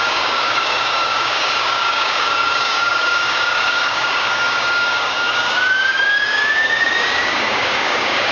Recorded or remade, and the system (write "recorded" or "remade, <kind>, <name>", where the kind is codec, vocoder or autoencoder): remade, codec, DAC